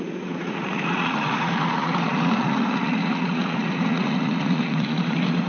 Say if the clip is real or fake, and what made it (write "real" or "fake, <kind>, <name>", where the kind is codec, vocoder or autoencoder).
fake, vocoder, Vocos